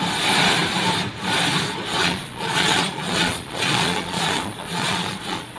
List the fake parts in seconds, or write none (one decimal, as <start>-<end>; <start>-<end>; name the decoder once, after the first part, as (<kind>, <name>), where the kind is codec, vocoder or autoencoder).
2.0-5.6 (vocoder, Vocos)